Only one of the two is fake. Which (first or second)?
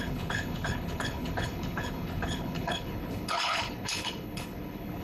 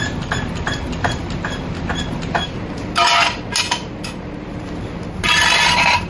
first